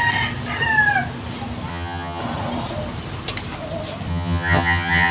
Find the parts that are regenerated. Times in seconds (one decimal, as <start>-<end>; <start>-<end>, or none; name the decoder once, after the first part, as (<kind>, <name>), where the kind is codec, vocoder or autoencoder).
1.7-2.2 (vocoder, HiFi-GAN); 4.1-5.1